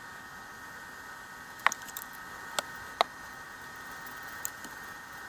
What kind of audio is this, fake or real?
real